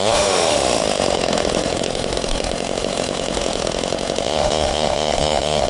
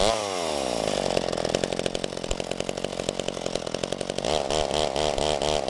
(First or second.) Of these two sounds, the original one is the second